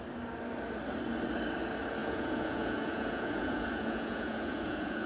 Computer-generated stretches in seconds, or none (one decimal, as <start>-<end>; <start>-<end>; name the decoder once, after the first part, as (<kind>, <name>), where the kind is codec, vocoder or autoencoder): 2.0-5.1 (vocoder, Vocos)